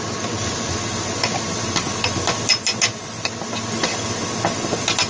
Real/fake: real